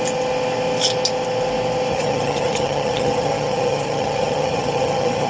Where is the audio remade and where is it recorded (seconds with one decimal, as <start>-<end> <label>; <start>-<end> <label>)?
0.0-1.9 recorded; 1.9-5.3 remade